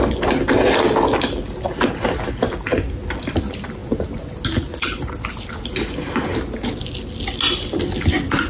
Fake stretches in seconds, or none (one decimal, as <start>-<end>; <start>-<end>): none